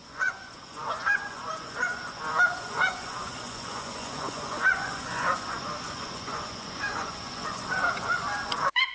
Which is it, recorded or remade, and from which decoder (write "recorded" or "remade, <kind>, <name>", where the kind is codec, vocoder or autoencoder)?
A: remade, vocoder, Vocos